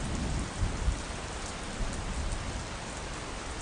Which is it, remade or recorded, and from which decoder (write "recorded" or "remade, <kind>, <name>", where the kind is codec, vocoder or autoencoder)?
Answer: recorded